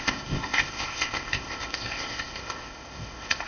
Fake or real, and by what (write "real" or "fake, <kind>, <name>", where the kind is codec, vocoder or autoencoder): fake, codec, ZipCodec